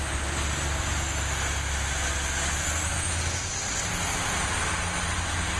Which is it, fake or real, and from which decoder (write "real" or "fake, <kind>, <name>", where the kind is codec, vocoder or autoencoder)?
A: real